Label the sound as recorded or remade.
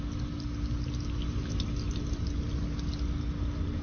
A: recorded